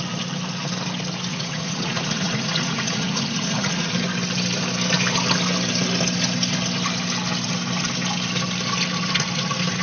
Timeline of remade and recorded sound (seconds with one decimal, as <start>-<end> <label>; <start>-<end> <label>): 0.0-1.3 recorded; 1.3-3.9 remade; 3.9-9.8 recorded